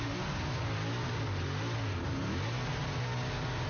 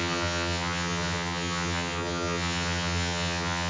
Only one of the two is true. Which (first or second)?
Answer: first